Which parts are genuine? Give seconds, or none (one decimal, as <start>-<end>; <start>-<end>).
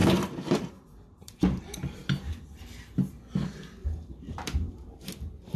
1.6-3.8; 5.1-5.6